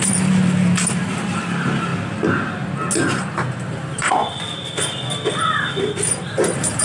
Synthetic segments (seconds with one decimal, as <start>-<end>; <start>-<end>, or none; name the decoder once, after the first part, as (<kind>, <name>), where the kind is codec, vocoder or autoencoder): 0.0-1.9 (vocoder, BigVGAN v2); 3.2-4.2; 5.3-6.8

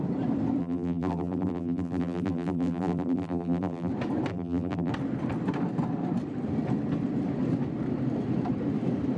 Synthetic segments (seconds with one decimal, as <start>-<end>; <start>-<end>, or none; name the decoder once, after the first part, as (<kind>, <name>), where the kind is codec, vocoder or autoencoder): 0.6-3.9 (vocoder, BigVGAN v2); 4.3-4.9

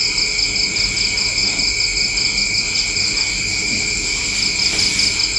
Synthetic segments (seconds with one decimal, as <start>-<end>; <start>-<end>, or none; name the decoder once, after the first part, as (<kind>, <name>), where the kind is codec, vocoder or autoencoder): none

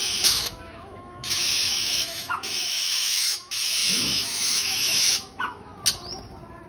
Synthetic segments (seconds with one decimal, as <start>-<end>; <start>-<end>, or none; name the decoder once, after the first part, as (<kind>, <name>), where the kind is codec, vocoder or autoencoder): 0.0-5.7 (autoencoder, DAC-VAE)

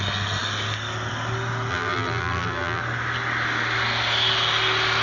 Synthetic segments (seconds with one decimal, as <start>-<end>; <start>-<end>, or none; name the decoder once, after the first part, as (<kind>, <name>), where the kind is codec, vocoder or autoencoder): 1.7-2.8 (vocoder, BigVGAN v2)

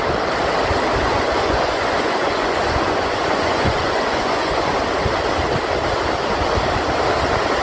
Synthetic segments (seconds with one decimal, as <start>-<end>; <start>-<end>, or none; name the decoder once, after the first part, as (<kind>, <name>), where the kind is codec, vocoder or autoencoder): 1.0-4.7 (vocoder, Vocos)